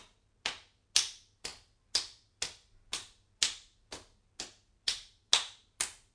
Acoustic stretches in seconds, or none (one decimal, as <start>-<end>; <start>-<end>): 0.0-6.1

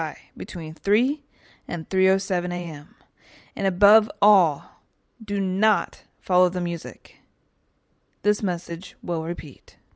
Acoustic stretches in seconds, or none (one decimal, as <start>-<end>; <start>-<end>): 0.0-1.4; 6.1-7.6; 8.7-10.0

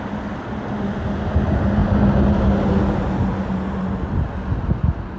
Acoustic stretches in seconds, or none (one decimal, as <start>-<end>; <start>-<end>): 0.0-5.2

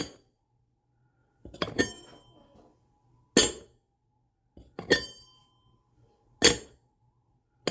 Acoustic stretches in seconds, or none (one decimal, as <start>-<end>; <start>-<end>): 0.0-7.7

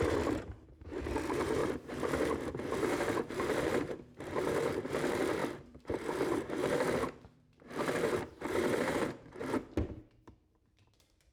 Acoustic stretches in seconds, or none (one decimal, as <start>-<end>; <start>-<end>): 9.4-10.4

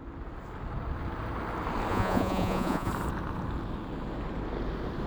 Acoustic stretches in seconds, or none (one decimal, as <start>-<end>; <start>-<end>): 0.0-1.9; 2.9-5.1